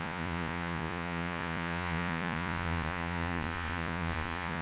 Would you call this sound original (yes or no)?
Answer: no